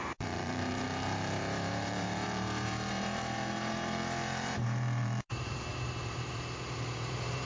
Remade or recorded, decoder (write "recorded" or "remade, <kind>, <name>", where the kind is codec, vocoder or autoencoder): remade, vocoder, BigVGAN v2